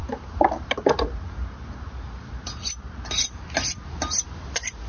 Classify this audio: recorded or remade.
recorded